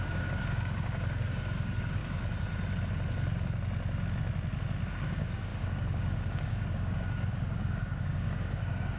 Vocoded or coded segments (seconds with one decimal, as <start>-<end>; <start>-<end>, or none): 0.0-2.0; 4.9-9.0